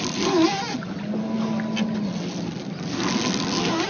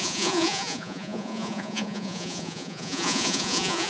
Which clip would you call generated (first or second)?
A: second